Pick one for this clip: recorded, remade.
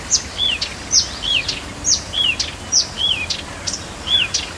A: recorded